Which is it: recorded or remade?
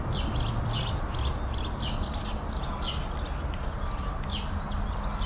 recorded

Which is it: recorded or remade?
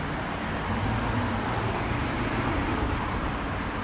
recorded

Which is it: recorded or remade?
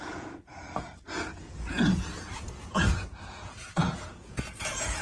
remade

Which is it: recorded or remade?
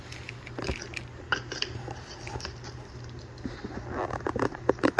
recorded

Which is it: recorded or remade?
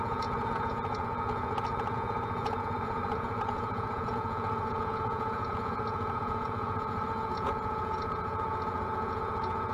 remade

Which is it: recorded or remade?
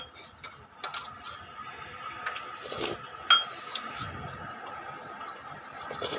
recorded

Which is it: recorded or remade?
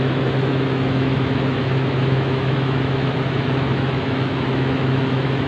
remade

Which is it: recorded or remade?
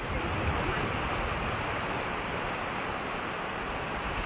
recorded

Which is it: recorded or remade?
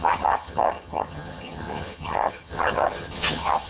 remade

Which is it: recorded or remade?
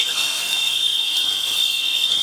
remade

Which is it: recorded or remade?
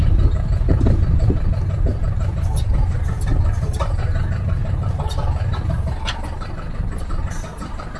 remade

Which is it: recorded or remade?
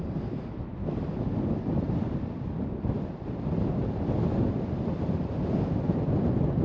recorded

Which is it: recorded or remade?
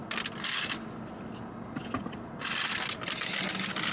recorded